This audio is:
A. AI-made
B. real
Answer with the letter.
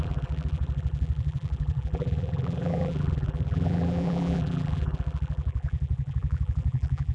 A